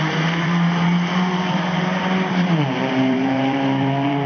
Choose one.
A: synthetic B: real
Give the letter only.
A